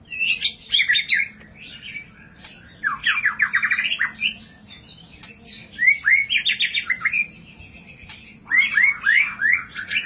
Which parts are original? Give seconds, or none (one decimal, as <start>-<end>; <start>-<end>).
0.0-9.1